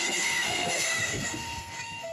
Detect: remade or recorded remade